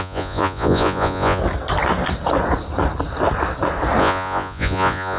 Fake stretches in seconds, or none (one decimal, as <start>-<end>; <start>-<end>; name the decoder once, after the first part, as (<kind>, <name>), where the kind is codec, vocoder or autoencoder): 0.0-1.4 (vocoder, Vocos); 4.0-5.2